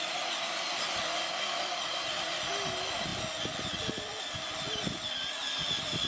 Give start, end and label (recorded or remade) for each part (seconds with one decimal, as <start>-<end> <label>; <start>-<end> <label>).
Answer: 0.0-6.1 recorded